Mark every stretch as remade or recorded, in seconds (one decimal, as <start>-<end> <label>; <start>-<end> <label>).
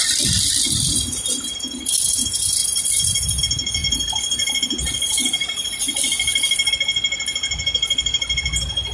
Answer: 0.0-2.6 recorded; 2.6-3.4 remade; 3.4-3.8 recorded; 3.8-6.7 remade; 6.7-8.9 recorded